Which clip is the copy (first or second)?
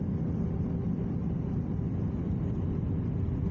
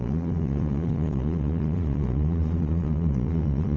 second